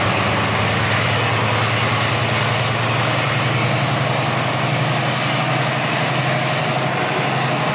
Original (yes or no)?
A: yes